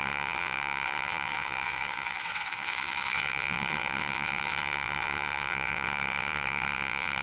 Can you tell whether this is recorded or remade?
remade